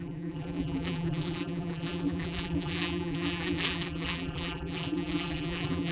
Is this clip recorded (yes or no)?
no